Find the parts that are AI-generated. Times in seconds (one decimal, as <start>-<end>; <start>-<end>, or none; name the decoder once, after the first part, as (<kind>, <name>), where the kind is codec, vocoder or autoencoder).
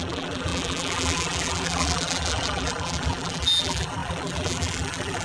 0.0-5.2 (vocoder, BigVGAN v2)